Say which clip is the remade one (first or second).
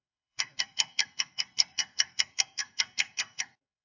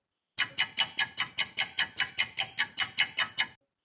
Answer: first